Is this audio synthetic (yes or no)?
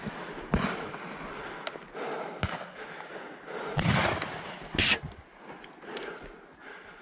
no